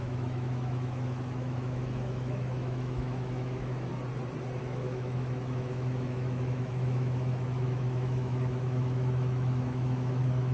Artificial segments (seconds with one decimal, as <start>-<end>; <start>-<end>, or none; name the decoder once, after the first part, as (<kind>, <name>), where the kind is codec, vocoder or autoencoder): 0.0-3.9 (autoencoder, DAC-VAE); 4.6-10.5